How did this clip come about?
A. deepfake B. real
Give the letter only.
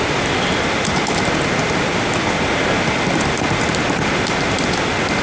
B